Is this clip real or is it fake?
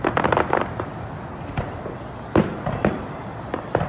real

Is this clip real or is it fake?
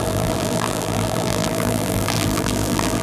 fake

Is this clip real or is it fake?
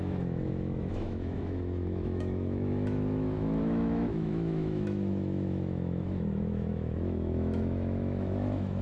fake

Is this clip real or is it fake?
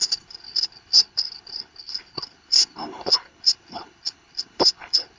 fake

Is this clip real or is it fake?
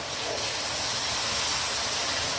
real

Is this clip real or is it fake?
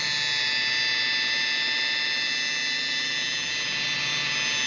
real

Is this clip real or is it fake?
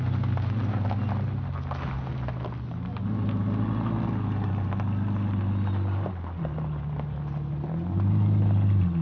real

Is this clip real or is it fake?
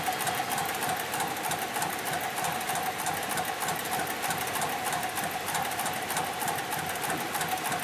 real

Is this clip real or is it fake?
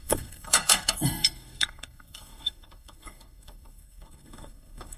fake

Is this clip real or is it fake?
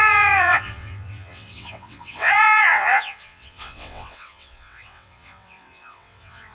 fake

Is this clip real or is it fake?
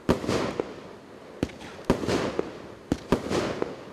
real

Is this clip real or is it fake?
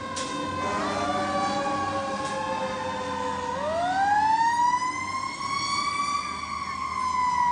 real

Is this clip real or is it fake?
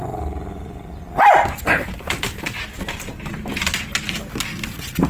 real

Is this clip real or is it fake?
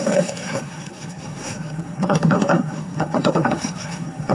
fake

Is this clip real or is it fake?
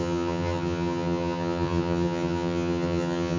fake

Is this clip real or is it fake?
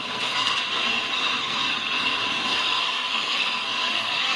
fake